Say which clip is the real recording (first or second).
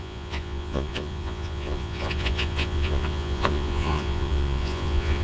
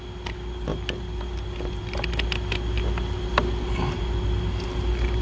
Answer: second